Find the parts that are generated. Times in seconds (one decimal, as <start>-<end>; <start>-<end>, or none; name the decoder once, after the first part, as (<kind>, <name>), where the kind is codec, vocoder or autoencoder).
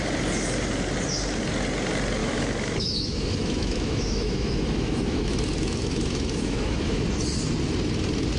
2.2-7.0 (autoencoder, DAC-VAE)